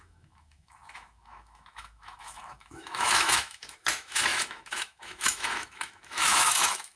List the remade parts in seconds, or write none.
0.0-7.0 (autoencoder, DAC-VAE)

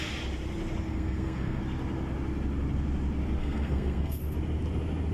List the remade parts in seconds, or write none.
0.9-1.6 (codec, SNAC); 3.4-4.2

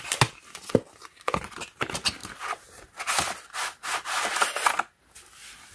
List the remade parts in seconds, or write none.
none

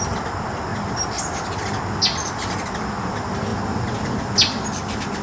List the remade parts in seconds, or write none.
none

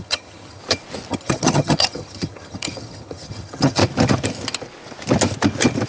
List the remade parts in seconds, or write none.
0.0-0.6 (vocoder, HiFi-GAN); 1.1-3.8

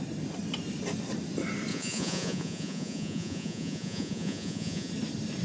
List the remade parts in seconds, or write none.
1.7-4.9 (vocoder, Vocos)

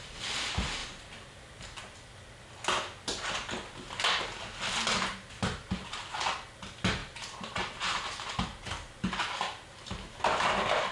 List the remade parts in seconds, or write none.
none